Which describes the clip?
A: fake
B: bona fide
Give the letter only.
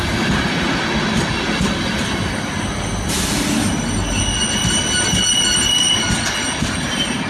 B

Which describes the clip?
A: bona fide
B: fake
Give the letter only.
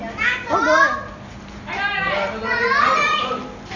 A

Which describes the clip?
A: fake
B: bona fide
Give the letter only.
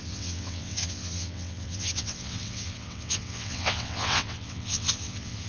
A